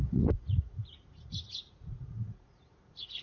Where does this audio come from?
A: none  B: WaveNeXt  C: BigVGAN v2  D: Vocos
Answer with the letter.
D